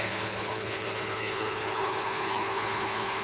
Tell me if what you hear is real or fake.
fake